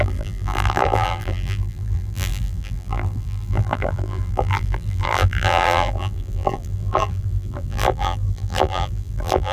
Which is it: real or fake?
fake